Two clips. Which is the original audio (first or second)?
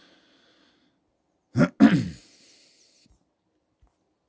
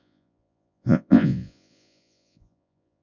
first